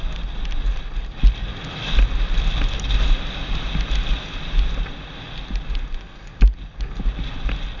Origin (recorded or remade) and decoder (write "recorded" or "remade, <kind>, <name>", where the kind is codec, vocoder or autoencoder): recorded